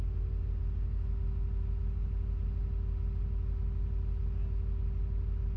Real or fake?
real